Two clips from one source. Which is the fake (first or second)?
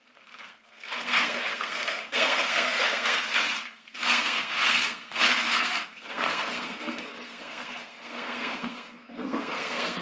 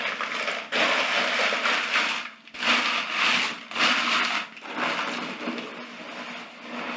first